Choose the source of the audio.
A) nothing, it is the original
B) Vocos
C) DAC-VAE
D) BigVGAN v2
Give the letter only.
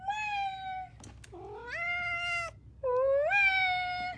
A